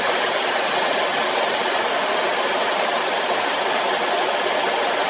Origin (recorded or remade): recorded